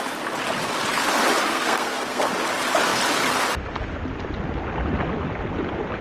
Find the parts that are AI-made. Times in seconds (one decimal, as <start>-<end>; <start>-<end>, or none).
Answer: 1.5-2.3